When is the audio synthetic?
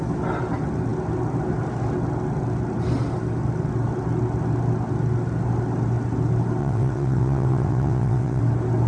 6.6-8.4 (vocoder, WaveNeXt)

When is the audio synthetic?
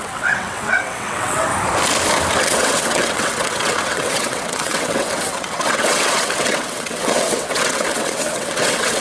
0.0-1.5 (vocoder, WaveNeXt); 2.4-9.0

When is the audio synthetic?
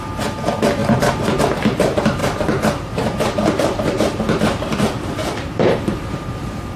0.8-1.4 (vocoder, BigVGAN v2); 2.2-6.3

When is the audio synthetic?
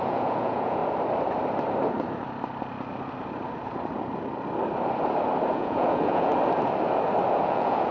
0.0-0.8 (vocoder, Vocos); 5.5-6.3; 7.3-7.9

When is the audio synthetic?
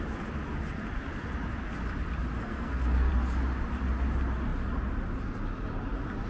2.4-3.1 (codec, SNAC)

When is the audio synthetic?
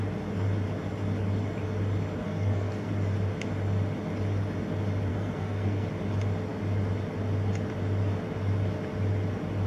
2.2-2.9 (codec, SNAC); 5.1-5.9